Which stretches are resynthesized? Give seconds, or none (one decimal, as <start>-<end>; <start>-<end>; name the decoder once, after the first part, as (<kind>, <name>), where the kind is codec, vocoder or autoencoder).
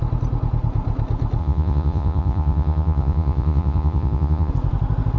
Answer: 1.4-4.5 (vocoder, Vocos)